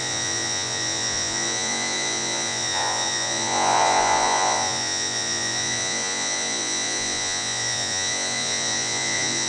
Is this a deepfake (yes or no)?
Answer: yes